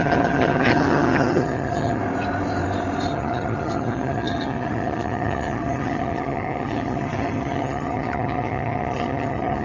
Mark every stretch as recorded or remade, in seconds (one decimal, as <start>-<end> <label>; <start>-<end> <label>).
0.0-2.0 remade; 2.0-3.1 recorded; 3.1-9.6 remade